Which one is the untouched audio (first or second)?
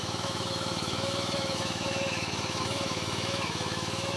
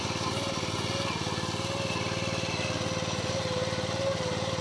second